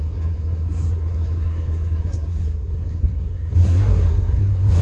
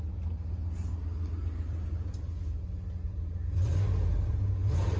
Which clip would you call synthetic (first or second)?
first